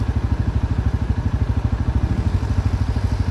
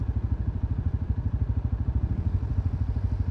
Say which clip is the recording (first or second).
first